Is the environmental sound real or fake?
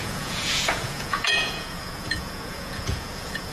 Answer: fake